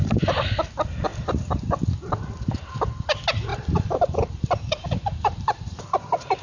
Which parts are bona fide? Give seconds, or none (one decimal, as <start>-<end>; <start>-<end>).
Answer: 0.0-3.5